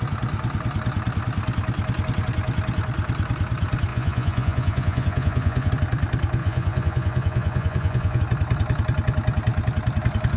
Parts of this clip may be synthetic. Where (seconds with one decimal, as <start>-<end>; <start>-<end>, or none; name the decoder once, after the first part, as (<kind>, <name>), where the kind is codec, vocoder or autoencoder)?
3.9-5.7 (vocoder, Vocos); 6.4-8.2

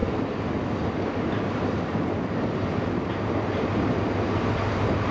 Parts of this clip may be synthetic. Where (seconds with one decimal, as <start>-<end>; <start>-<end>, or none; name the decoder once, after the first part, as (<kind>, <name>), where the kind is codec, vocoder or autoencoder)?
none

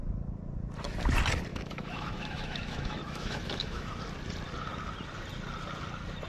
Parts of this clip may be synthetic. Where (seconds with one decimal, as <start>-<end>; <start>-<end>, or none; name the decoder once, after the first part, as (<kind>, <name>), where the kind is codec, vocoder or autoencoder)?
1.5-3.9 (autoencoder, DAC-VAE)

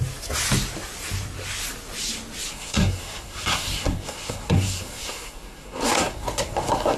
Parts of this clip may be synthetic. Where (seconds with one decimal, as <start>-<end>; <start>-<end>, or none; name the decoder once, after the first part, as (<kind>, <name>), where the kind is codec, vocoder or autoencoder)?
2.5-7.0 (codec, SNAC)

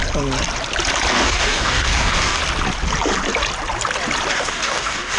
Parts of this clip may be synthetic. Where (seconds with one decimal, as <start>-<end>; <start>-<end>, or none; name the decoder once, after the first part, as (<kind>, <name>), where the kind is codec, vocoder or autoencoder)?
1.1-2.4 (codec, DAC); 4.3-5.2

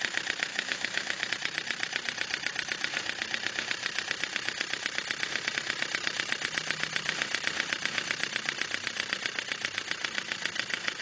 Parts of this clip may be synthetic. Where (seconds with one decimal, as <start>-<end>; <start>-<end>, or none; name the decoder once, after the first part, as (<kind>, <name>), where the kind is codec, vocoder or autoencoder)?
0.5-1.3 (autoencoder, DAC-VAE)

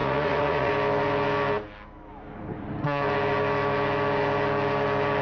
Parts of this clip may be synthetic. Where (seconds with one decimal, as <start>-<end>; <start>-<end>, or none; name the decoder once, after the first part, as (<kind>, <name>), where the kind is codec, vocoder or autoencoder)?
0.0-0.7 (vocoder, Vocos)

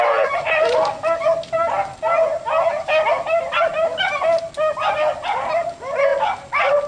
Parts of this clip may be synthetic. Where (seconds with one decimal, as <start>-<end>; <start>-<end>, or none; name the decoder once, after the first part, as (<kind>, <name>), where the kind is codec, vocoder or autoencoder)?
none